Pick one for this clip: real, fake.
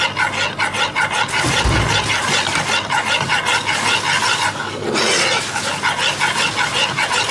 real